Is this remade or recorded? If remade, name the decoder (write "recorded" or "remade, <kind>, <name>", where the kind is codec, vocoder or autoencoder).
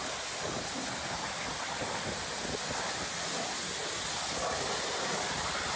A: recorded